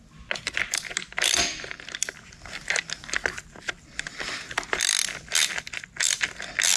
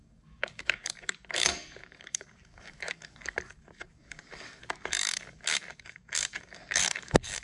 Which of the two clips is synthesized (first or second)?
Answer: second